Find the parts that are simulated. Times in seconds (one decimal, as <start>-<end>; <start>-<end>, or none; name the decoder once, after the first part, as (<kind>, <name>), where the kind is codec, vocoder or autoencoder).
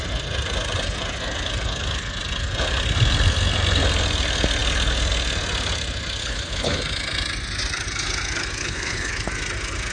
6.2-6.8 (codec, HILCodec); 8.6-9.1